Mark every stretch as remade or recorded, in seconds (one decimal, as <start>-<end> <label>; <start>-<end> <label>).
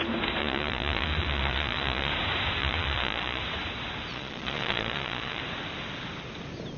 0.0-0.4 recorded; 0.4-2.1 remade; 2.1-2.6 recorded; 2.6-3.4 remade; 3.4-4.1 recorded; 4.1-5.4 remade; 5.4-6.8 recorded